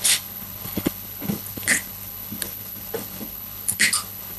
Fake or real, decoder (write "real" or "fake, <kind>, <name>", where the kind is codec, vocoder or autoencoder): fake, codec, HILCodec